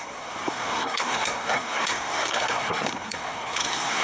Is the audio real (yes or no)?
no